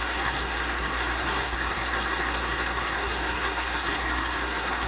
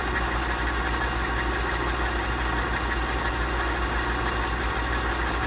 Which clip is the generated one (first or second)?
first